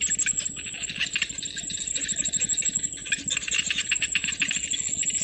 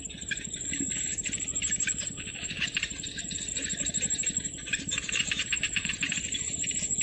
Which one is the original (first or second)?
first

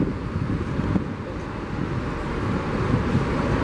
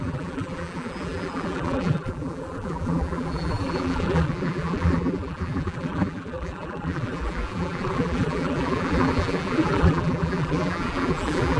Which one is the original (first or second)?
first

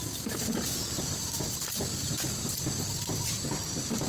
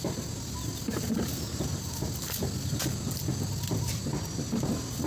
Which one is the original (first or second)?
second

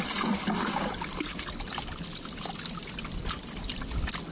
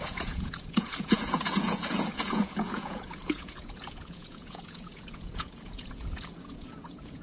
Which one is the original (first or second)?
first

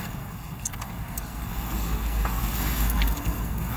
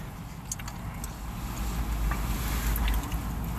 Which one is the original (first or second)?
second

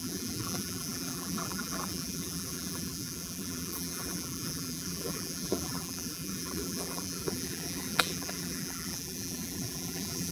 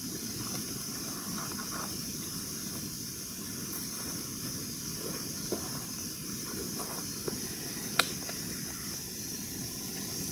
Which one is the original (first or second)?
second